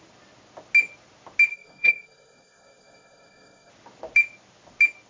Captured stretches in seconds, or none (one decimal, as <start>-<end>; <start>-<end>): 0.0-1.5; 3.7-5.1